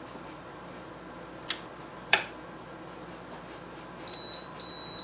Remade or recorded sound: recorded